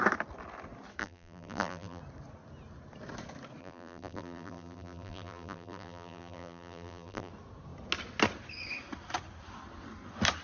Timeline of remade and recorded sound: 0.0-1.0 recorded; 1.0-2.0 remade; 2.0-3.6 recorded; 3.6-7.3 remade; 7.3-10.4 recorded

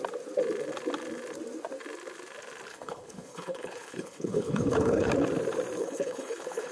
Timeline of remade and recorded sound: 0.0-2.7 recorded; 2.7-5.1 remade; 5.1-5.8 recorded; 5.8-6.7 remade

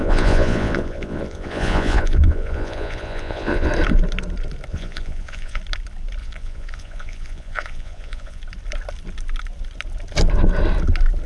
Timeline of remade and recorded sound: 0.0-3.7 remade; 3.7-4.7 recorded; 4.7-5.6 remade; 5.6-6.2 recorded; 6.2-8.4 remade; 8.4-11.3 recorded